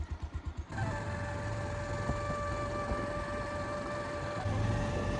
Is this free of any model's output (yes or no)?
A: yes